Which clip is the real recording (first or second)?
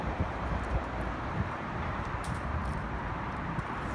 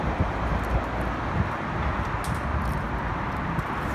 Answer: second